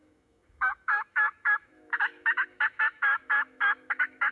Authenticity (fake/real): fake